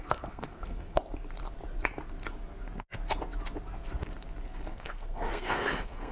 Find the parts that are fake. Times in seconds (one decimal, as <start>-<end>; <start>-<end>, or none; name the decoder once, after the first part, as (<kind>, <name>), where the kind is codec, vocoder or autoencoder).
0.0-1.0 (codec, SNAC); 4.7-6.1